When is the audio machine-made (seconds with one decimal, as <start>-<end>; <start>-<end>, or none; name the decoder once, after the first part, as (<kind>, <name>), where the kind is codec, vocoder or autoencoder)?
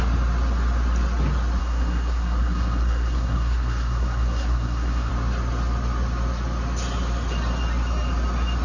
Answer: 1.6-5.1 (codec, SNAC)